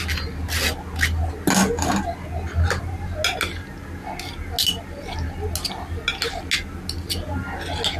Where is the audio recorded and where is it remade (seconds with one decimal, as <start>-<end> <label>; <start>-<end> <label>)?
0.0-8.0 recorded